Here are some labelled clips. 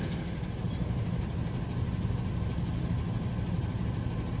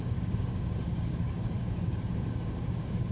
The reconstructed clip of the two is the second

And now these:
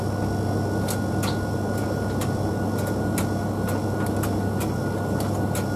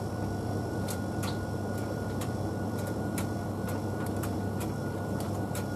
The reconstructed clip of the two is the second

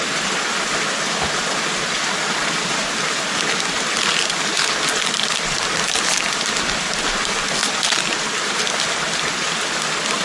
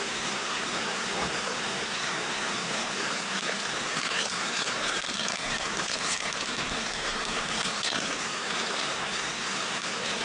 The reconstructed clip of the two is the second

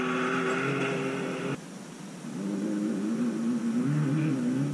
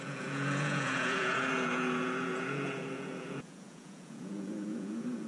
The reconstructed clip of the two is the second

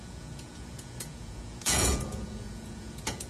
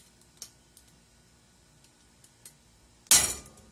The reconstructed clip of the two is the first